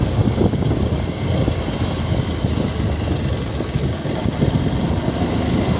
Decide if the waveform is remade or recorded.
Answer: recorded